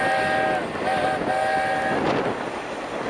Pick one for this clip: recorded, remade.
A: recorded